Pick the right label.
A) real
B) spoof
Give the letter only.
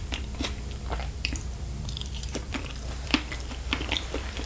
B